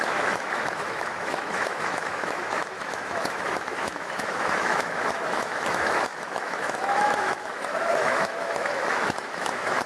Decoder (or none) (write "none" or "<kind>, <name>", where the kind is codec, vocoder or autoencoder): autoencoder, DAC-VAE